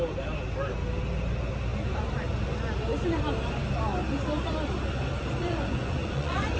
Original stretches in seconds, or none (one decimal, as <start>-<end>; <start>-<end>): 0.0-5.4